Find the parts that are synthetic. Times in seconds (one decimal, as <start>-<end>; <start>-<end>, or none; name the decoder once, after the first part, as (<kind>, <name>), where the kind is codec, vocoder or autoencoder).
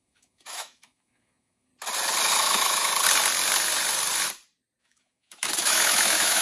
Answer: 0.0-1.7 (autoencoder, DAC-VAE); 2.4-2.9; 4.8-6.4